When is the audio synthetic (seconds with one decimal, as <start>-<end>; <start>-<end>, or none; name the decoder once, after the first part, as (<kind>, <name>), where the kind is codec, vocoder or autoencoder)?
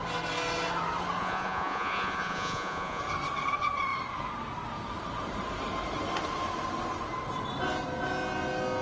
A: 1.2-3.0 (vocoder, Vocos)